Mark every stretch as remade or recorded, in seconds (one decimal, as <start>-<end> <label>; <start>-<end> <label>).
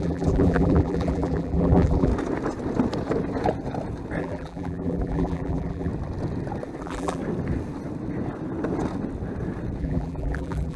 0.0-2.1 remade; 2.1-4.2 recorded; 4.2-5.9 remade; 5.9-6.8 recorded; 6.8-7.2 remade; 7.2-9.8 recorded; 9.8-10.8 remade